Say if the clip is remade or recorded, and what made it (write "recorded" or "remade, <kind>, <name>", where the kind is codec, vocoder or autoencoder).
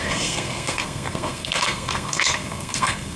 remade, codec, SNAC